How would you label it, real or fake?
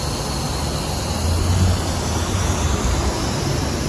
real